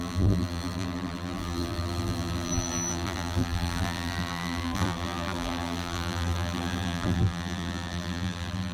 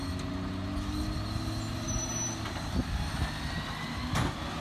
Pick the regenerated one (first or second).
first